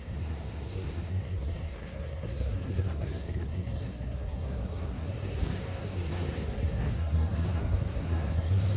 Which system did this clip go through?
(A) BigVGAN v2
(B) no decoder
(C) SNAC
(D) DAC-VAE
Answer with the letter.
C